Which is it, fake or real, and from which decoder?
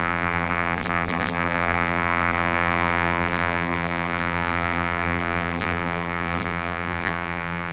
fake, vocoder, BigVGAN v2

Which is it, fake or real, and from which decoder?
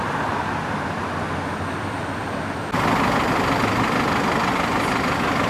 real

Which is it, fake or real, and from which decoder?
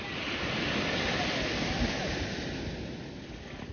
real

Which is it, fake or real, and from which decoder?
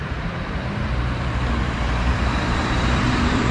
fake, vocoder, BigVGAN v2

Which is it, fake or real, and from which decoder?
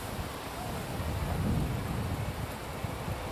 real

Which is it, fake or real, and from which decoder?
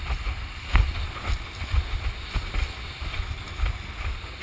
real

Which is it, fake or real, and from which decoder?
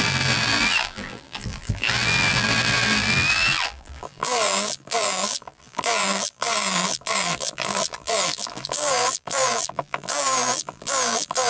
fake, vocoder, BigVGAN v2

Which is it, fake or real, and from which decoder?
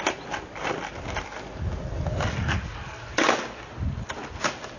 real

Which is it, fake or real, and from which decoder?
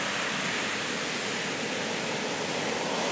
real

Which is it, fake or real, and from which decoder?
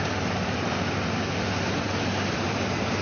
fake, vocoder, BigVGAN v2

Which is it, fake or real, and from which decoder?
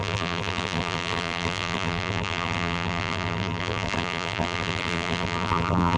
fake, vocoder, BigVGAN v2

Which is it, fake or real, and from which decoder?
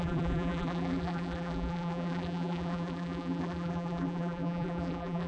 fake, vocoder, BigVGAN v2